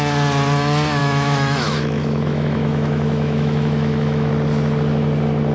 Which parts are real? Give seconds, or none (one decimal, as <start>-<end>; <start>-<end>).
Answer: 0.0-1.0; 4.3-5.5